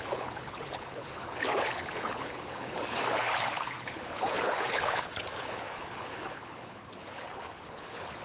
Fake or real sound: fake